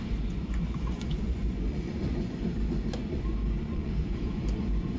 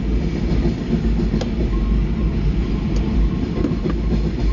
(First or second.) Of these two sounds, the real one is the second